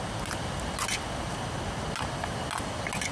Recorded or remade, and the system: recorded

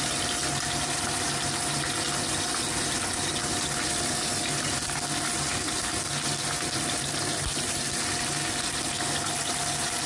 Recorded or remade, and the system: recorded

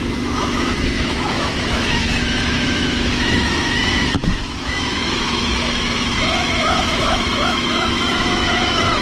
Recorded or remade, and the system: remade, autoencoder, DAC-VAE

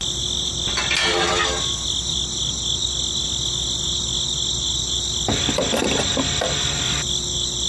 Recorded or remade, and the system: recorded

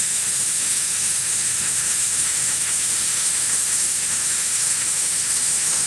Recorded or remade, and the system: remade, autoencoder, DAC-VAE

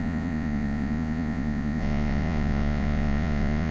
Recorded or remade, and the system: remade, vocoder, Vocos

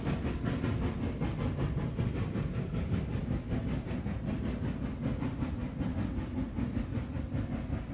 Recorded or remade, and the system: recorded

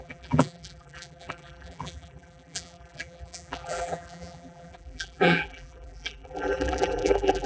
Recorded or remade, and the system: remade, vocoder, BigVGAN v2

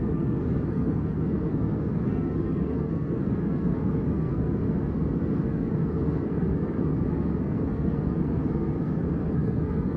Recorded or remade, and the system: remade, codec, SNAC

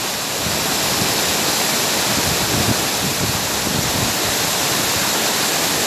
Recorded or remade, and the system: recorded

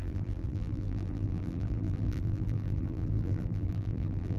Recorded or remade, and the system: remade, vocoder, BigVGAN v2